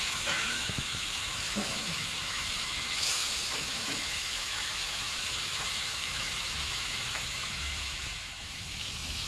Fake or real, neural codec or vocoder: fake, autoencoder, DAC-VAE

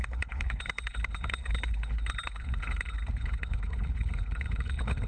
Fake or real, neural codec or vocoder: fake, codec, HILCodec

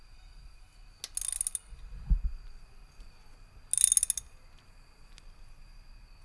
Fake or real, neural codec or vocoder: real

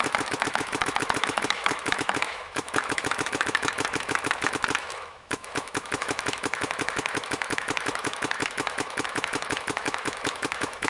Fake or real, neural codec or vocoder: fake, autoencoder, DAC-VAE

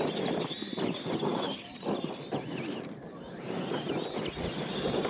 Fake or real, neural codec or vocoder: real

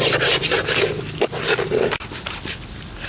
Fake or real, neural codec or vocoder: real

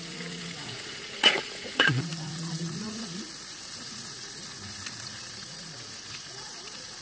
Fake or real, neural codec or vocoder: fake, vocoder, Vocos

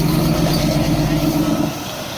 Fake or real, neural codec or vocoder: real